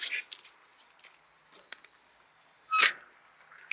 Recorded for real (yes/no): yes